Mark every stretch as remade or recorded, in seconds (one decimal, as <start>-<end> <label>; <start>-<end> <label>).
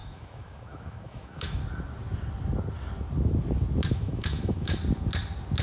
0.0-1.6 remade; 1.6-3.9 recorded; 3.9-4.8 remade; 4.8-5.6 recorded